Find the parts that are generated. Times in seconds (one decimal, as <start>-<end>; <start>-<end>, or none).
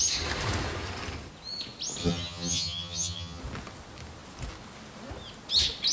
2.0-3.4